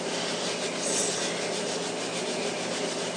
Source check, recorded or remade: recorded